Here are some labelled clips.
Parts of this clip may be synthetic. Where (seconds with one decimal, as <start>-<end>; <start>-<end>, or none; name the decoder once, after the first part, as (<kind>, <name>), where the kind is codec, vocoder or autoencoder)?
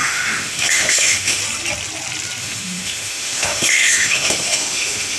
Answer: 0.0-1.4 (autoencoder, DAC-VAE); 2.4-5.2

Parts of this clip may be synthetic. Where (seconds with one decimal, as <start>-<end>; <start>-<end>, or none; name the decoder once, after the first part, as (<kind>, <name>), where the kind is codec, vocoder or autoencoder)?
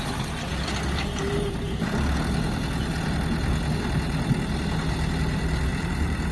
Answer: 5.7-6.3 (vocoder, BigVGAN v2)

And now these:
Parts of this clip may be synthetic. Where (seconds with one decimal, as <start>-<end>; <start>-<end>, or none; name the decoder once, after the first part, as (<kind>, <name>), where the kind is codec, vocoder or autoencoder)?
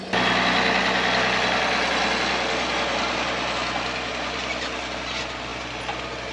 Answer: none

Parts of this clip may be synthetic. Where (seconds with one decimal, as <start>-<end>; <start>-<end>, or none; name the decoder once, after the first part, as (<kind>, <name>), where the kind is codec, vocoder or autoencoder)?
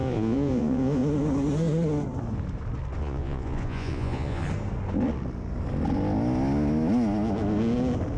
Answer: 0.0-1.0 (vocoder, Vocos); 3.0-4.4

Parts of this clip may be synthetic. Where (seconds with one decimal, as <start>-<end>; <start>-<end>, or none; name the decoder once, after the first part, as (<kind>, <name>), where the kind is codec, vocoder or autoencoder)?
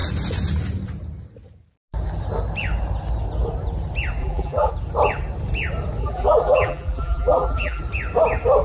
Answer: 4.2-4.7 (vocoder, BigVGAN v2); 6.0-7.8